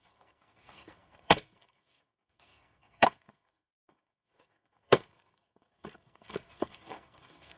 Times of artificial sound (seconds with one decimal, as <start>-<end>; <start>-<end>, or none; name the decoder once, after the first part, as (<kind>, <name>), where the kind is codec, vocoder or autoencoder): 0.0-7.6 (codec, SNAC)